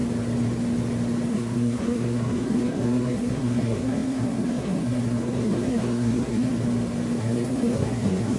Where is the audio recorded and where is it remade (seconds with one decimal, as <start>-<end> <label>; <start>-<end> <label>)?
0.0-1.3 recorded; 1.3-6.5 remade; 6.5-7.2 recorded; 7.2-8.4 remade